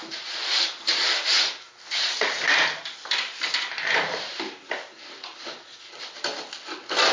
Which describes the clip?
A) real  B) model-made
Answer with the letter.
B